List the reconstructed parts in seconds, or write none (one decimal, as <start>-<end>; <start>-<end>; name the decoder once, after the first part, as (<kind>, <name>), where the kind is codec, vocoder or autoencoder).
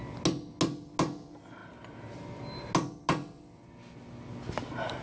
none